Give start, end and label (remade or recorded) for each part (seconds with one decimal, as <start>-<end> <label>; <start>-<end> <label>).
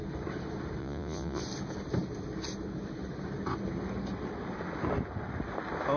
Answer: 0.0-0.8 recorded; 0.8-1.4 remade; 1.4-6.0 recorded